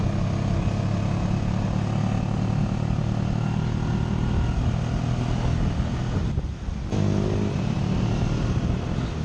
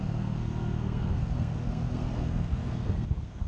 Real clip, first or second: first